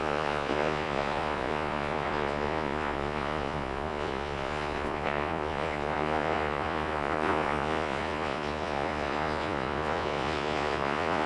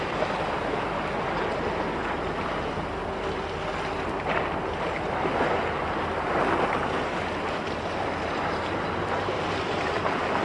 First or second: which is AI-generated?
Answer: first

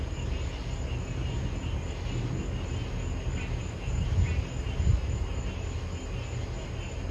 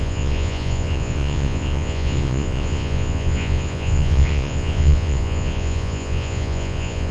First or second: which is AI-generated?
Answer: second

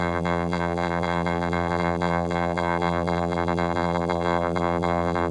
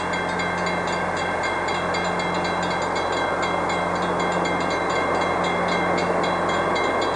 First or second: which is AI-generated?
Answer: first